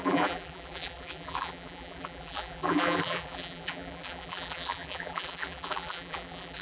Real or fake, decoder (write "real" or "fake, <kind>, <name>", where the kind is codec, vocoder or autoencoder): fake, vocoder, BigVGAN v2